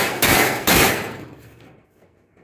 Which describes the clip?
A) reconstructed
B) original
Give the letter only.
A